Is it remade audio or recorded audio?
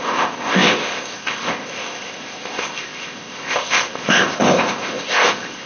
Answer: remade